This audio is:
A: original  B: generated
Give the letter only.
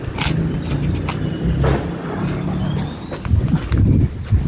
A